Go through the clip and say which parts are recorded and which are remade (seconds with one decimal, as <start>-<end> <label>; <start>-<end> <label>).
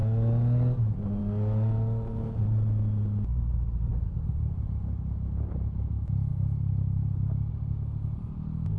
0.0-8.8 recorded